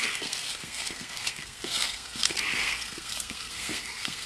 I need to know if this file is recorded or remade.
remade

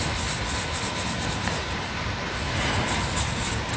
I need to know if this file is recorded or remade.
recorded